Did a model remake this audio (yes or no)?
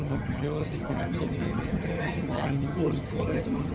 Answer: yes